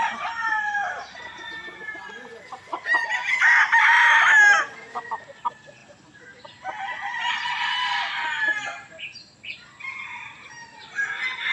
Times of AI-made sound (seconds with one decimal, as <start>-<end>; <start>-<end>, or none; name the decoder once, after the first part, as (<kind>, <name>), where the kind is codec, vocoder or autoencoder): none